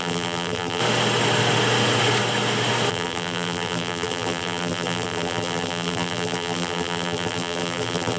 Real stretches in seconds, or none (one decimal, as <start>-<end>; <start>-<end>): 0.8-2.9